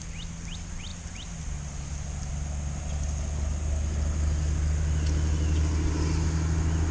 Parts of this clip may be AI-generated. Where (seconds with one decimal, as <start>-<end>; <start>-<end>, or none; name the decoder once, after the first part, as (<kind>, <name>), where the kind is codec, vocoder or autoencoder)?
none

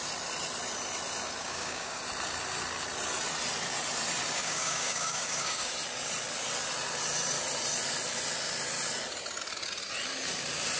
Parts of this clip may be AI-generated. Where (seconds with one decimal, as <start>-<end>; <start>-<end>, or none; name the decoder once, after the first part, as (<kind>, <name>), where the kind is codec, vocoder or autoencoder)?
1.4-2.0 (codec, DAC); 4.4-5.7

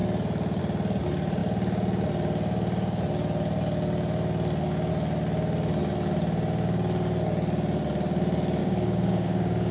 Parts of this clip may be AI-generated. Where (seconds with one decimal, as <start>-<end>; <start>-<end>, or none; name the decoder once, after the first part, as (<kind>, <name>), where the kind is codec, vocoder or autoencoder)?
8.6-9.7 (codec, DAC)